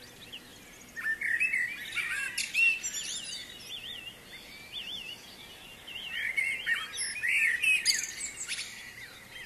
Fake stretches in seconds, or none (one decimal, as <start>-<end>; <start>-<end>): none